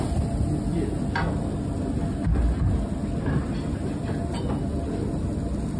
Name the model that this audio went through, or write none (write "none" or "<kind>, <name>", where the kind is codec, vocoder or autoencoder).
none